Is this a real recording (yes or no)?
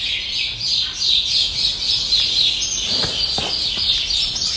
yes